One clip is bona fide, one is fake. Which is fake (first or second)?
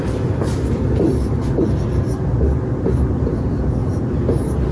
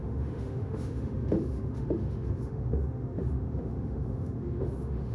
second